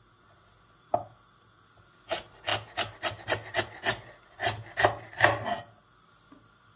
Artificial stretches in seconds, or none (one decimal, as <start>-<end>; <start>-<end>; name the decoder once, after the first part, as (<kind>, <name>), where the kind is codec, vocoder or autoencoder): none